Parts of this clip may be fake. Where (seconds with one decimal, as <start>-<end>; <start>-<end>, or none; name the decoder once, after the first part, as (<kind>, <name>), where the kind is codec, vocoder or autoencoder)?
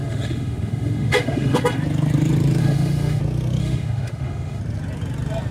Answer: 0.0-1.6 (autoencoder, DAC-VAE); 2.6-3.2; 3.6-4.6